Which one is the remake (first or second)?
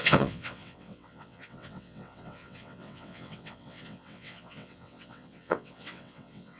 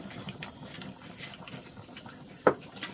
first